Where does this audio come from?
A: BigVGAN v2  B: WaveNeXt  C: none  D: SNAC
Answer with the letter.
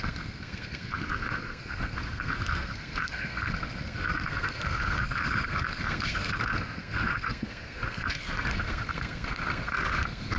D